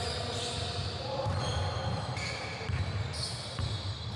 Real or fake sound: real